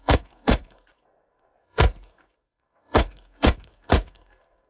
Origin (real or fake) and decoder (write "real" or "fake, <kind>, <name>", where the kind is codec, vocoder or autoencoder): fake, codec, SNAC